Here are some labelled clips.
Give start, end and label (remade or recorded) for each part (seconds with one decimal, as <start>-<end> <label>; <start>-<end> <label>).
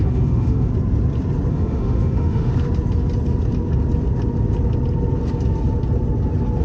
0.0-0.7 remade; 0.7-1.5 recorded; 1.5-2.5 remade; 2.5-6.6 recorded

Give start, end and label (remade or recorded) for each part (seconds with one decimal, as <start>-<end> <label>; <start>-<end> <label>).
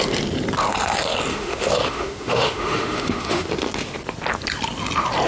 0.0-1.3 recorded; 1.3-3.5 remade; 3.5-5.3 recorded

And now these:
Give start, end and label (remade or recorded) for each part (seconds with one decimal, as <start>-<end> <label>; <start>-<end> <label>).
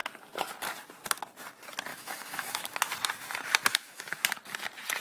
0.0-1.9 recorded; 1.9-2.9 remade; 2.9-3.7 recorded; 3.7-4.2 remade; 4.2-5.0 recorded